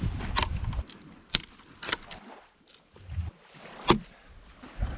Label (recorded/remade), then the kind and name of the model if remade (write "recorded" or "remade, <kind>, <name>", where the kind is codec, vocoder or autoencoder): recorded